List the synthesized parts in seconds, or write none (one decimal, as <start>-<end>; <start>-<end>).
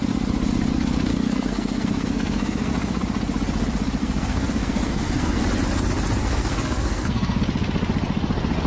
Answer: 1.1-2.7; 4.0-5.4; 6.2-7.4